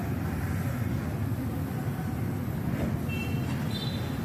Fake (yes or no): no